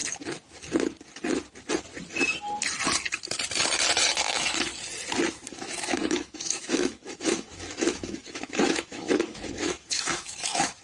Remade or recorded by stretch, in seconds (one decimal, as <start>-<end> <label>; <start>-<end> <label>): 0.0-4.3 recorded; 4.3-4.7 remade; 4.7-5.3 recorded; 5.3-10.8 remade